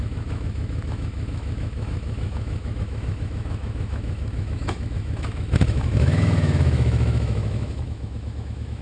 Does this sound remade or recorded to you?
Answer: remade